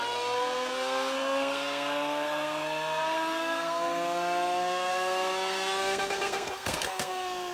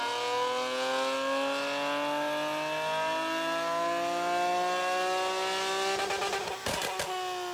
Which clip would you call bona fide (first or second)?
second